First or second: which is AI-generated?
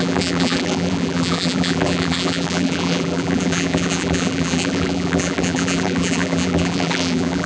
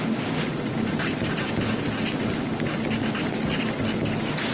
first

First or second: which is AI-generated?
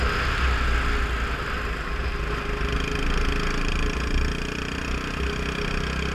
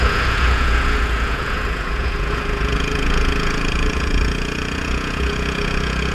second